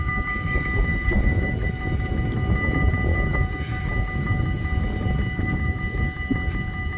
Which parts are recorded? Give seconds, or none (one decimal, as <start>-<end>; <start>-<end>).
0.0-3.1; 3.8-7.0